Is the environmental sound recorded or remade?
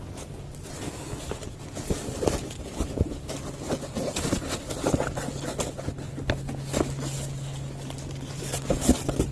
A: recorded